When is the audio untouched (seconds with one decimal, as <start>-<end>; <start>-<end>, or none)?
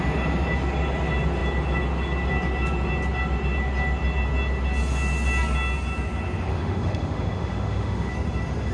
0.0-6.5; 8.1-8.7